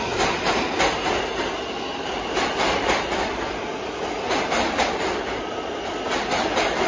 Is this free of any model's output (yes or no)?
yes